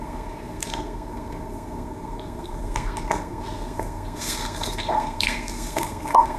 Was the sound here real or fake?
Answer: fake